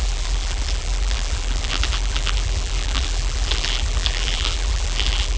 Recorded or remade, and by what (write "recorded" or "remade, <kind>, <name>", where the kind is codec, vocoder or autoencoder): remade, vocoder, BigVGAN v2